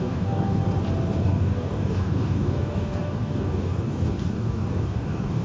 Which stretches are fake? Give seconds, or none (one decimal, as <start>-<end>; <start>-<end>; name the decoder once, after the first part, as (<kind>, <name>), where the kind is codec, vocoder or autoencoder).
0.0-0.6 (codec, DAC); 1.2-5.4